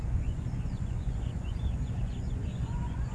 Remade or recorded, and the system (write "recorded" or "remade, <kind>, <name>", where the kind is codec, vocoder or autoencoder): remade, vocoder, Vocos